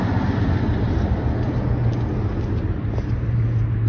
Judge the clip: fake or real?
real